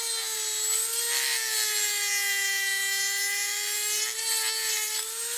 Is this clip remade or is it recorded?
recorded